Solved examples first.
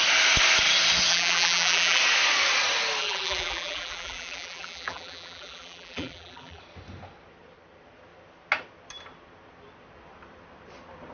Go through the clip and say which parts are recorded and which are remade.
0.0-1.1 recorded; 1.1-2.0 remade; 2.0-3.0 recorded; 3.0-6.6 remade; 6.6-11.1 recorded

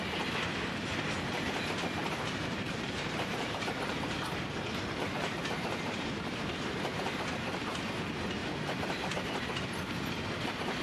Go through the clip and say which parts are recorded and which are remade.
0.0-2.0 recorded; 2.0-4.5 remade; 4.5-5.2 recorded; 5.2-7.6 remade; 7.6-8.4 recorded; 8.4-9.3 remade; 9.3-10.8 recorded

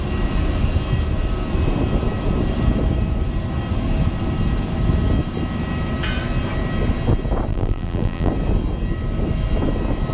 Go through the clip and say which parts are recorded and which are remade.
0.0-7.5 recorded; 7.5-8.3 remade; 8.3-10.1 recorded

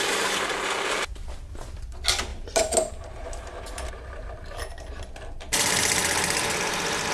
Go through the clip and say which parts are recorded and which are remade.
0.0-2.3 recorded; 2.3-4.7 remade; 4.7-7.1 recorded

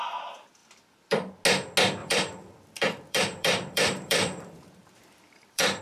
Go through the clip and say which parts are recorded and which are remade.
0.0-0.6 recorded; 0.6-1.3 remade; 1.3-2.0 recorded; 2.0-5.8 remade